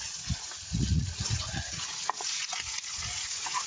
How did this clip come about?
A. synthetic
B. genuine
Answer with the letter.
A